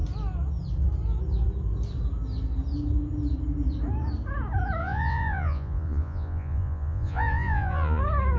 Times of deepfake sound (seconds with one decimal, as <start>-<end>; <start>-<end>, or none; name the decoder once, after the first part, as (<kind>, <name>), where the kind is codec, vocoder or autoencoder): 4.8-8.0 (vocoder, Vocos)